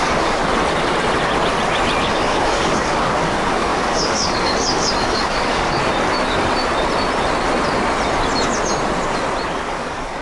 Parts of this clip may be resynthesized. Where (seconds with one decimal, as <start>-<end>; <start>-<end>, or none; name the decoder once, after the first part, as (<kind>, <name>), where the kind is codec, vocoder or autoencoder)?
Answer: 0.0-0.4 (codec, DAC); 2.0-5.8; 9.7-10.2